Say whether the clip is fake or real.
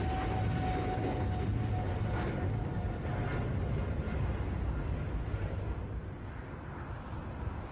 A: real